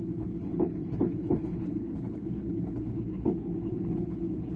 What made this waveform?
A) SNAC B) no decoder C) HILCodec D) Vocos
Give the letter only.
C